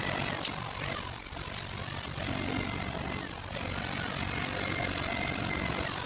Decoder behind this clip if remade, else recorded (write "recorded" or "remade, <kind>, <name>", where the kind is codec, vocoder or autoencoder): recorded